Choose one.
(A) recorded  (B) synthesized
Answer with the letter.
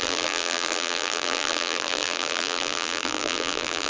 B